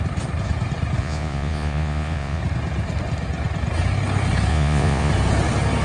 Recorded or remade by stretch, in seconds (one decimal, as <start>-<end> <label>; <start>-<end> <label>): 0.0-1.0 recorded; 1.0-2.4 remade; 2.4-4.5 recorded; 4.5-5.1 remade; 5.1-5.8 recorded